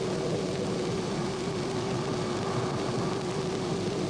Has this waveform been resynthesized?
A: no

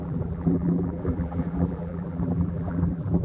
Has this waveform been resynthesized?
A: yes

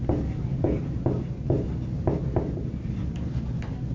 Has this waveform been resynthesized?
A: no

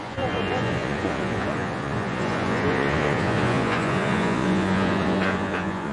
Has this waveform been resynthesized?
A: yes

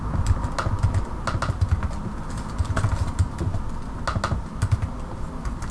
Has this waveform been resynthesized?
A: no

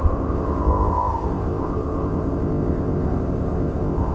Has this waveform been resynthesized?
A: yes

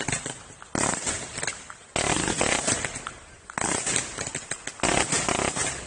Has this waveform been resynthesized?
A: no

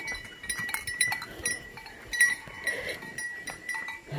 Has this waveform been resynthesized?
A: no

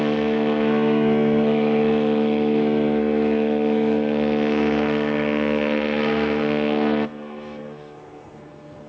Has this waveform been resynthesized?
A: yes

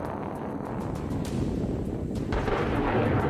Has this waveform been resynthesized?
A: no